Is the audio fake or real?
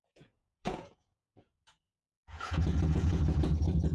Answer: fake